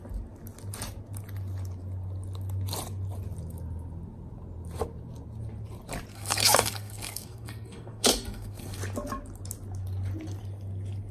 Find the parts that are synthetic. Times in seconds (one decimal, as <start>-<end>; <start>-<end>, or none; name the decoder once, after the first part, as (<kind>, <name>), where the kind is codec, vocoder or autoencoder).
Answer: 6.1-8.8 (codec, SNAC)